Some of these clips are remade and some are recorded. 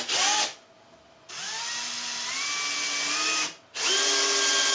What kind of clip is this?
recorded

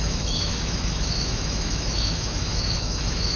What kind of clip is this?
remade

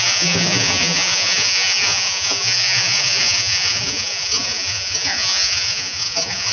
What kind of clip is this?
remade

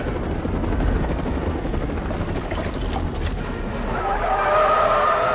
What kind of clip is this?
recorded